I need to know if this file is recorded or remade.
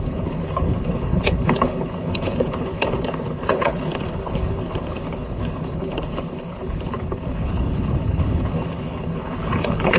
remade